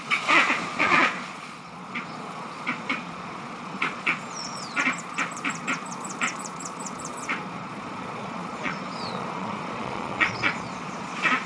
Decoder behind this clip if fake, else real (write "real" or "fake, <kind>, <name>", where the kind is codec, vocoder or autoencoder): fake, vocoder, Vocos